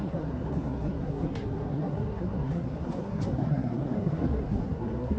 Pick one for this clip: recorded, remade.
remade